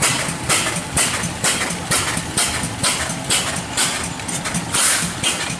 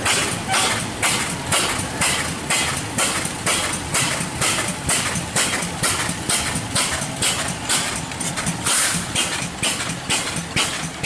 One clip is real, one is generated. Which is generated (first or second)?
second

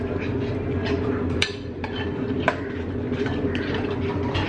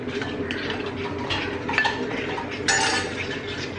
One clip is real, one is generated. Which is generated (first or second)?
first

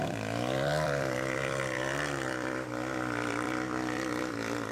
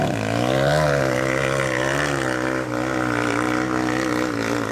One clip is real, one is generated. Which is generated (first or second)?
first